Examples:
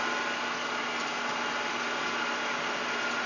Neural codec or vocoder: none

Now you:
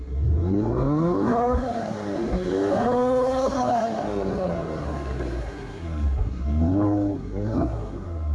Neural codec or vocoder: codec, SNAC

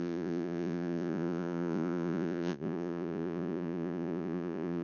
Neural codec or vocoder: vocoder, Vocos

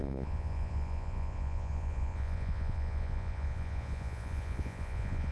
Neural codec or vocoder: vocoder, Vocos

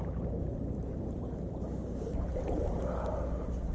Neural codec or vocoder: none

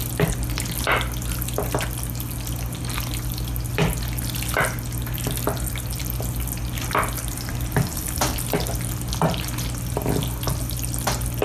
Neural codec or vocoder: none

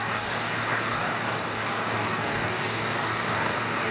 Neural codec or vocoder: codec, DAC